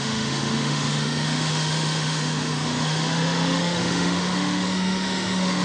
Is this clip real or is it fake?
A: fake